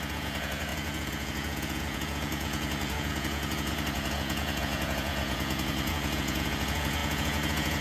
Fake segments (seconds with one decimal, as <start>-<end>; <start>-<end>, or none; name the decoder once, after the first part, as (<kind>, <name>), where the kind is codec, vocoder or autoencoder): 0.0-7.8 (vocoder, Vocos)